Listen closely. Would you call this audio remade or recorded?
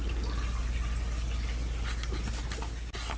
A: recorded